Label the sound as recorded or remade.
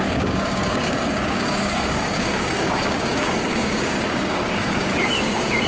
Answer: remade